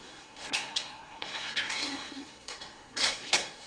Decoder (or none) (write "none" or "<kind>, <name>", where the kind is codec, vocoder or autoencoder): codec, SNAC